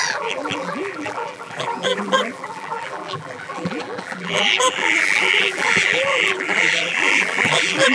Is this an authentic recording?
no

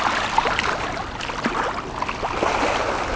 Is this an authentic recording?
yes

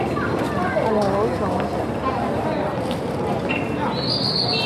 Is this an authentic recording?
yes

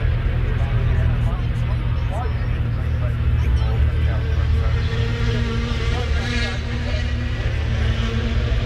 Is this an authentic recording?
yes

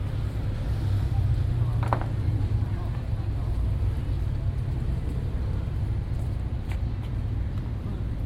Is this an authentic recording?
yes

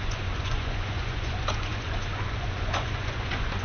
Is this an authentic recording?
no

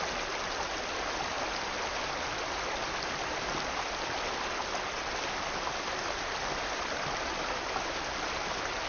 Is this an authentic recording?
yes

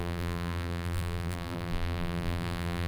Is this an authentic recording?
no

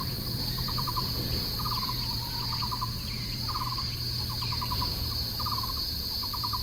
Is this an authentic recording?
no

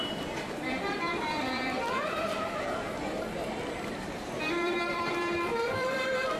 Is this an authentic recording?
no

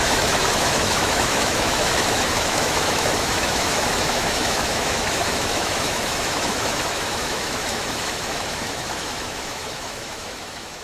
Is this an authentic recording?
no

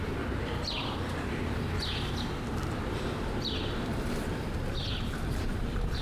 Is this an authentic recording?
no